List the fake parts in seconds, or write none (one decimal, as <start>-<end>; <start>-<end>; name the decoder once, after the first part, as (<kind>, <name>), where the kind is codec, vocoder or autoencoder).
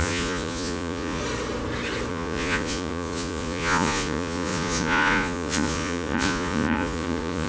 0.0-1.2 (vocoder, Vocos); 2.1-7.5